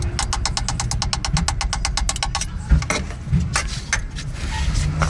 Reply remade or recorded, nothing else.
recorded